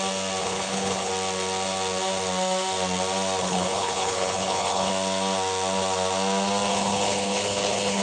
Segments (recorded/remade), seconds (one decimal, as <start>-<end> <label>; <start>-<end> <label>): 0.0-0.4 recorded; 0.4-1.1 remade; 1.1-3.4 recorded; 3.4-4.9 remade; 4.9-6.7 recorded; 6.7-8.0 remade